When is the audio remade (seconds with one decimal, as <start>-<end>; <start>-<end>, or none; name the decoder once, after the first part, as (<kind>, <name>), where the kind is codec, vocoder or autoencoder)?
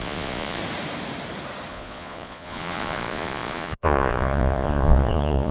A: 0.0-0.6 (vocoder, Vocos); 1.7-5.5